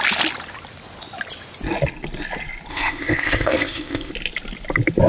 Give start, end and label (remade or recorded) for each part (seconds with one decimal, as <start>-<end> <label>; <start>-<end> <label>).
0.0-2.7 recorded; 2.7-4.1 remade; 4.1-5.1 recorded